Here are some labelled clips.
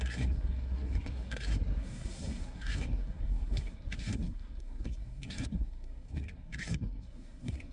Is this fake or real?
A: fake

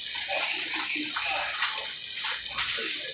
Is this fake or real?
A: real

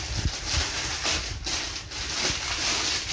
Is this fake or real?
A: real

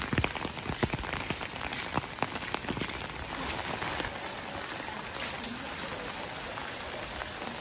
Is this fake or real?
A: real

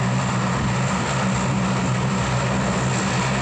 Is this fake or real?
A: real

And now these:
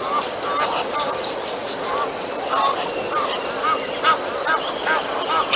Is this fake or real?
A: real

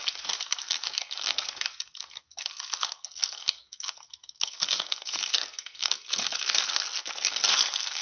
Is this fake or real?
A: fake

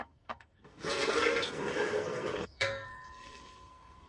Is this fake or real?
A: fake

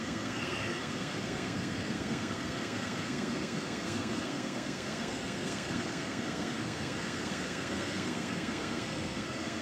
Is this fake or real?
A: fake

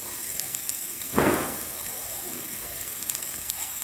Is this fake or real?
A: fake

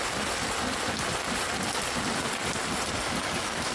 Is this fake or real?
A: real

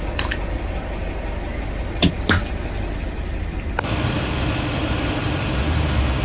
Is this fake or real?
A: real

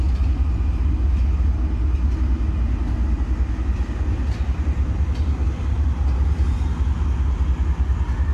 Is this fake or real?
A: real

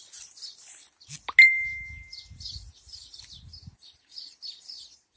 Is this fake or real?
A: real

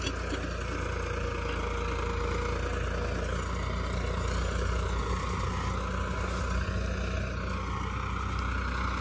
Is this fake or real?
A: real